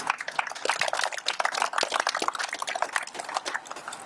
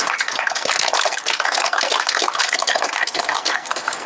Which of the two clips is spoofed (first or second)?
second